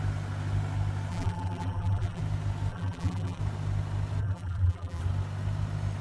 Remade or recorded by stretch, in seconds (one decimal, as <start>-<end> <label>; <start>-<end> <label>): 0.0-1.1 recorded; 1.1-2.2 remade; 2.2-2.7 recorded; 2.7-3.4 remade; 3.4-4.2 recorded; 4.2-5.0 remade; 5.0-6.0 recorded